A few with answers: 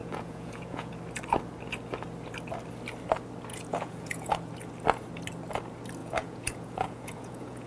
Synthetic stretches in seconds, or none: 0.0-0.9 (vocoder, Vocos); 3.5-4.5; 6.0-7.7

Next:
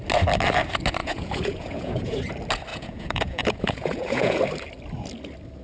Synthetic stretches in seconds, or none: 1.0-2.2 (vocoder, Vocos); 2.7-4.4

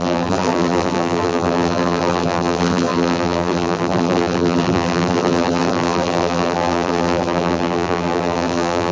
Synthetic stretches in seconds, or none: 0.0-8.9 (vocoder, BigVGAN v2)